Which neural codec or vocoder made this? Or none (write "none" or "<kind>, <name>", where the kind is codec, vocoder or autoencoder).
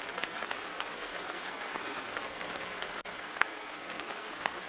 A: codec, SNAC